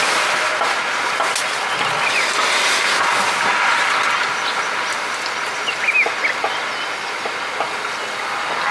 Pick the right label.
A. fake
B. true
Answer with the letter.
B